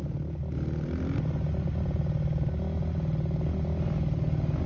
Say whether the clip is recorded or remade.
recorded